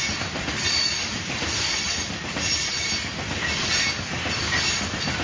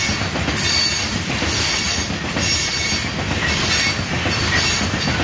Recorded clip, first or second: second